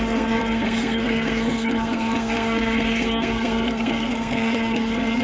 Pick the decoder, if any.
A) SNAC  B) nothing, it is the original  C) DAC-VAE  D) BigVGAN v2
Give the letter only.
A